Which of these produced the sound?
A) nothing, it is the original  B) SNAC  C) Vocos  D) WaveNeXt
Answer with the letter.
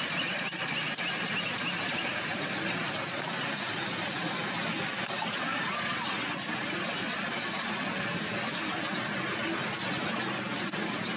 A